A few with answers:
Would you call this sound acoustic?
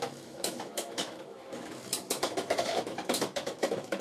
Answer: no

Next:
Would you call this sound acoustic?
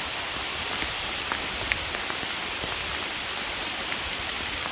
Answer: no